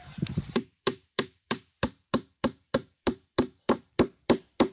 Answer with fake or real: fake